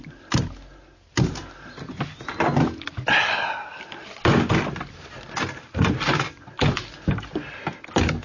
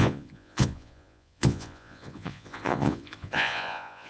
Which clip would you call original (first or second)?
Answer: first